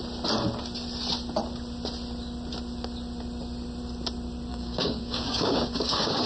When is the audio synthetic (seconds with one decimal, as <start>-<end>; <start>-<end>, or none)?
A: 4.5-6.3

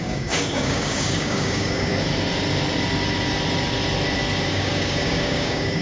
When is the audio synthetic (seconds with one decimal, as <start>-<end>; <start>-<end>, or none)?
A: 0.0-1.9; 4.5-5.8

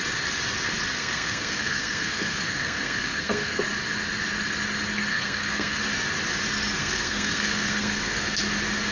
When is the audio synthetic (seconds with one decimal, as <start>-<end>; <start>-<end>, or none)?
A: 1.0-3.6; 5.1-5.8; 6.8-8.4

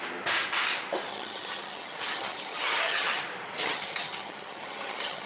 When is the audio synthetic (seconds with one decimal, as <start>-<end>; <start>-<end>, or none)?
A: 1.1-3.2; 3.6-5.3

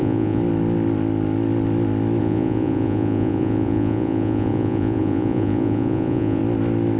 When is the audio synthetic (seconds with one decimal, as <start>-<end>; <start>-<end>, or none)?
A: 0.0-0.4; 2.2-6.4

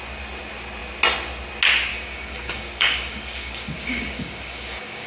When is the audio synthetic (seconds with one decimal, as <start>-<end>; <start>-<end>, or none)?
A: 1.9-5.1